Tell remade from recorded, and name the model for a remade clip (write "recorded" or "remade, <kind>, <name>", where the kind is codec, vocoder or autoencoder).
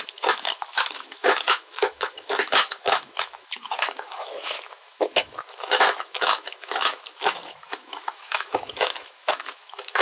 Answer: remade, autoencoder, DAC-VAE